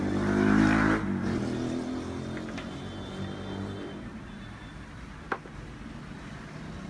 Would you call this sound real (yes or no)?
yes